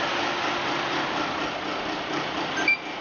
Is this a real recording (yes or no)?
yes